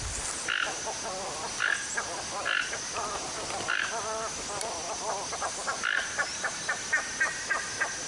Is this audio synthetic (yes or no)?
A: no